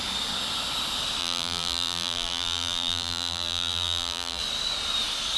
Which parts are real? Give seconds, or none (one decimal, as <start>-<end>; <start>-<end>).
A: 0.0-1.2; 4.4-5.4